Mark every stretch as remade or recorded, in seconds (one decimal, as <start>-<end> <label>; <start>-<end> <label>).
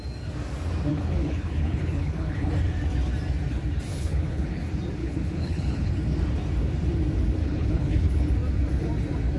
0.0-0.9 recorded; 0.9-2.5 remade; 2.5-3.9 recorded; 3.9-4.6 remade; 4.6-5.0 recorded; 5.0-5.9 remade; 5.9-7.4 recorded; 7.4-8.3 remade; 8.3-9.4 recorded